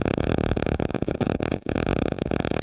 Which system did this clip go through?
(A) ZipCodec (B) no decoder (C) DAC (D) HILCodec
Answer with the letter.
C